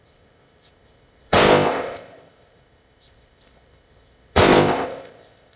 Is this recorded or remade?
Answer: remade